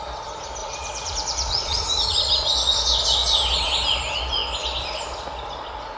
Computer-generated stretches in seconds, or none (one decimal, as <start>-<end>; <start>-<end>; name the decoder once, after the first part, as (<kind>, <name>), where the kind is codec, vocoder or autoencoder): 0.6-2.3 (vocoder, Vocos)